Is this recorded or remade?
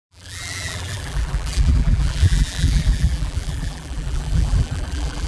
remade